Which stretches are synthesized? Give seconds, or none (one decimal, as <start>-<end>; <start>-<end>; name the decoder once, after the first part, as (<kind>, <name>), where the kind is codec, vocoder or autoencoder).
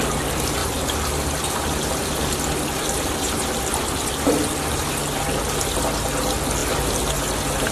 none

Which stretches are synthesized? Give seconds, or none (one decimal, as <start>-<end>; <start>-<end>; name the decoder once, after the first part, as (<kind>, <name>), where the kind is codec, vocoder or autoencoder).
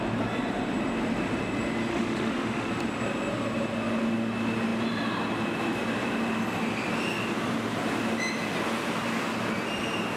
1.9-2.7 (autoencoder, DAC-VAE)